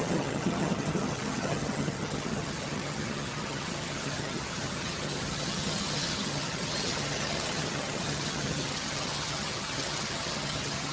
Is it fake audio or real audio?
fake